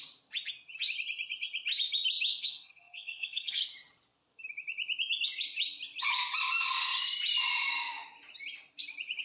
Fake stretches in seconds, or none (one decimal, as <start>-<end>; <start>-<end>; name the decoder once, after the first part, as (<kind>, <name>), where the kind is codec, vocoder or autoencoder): 2.3-3.6 (codec, SNAC)